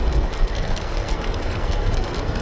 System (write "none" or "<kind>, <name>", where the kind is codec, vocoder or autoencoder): codec, SNAC